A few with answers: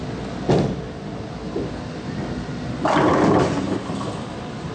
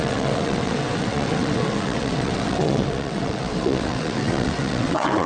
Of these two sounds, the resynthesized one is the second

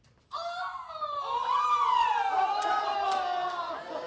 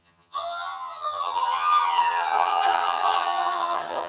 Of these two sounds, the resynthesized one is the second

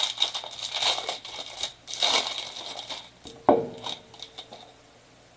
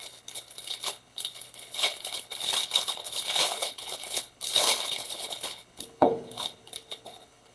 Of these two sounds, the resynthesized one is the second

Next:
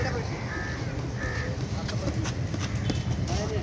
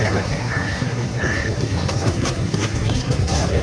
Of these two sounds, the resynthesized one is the second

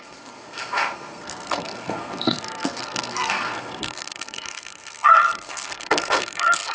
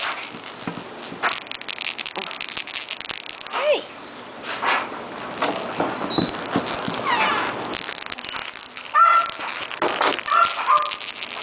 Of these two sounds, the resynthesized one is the first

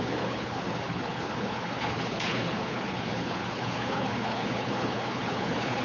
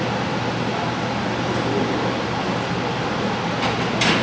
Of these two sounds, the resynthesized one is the first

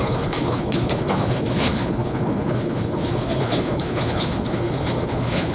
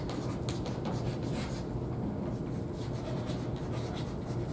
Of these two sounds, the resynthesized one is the first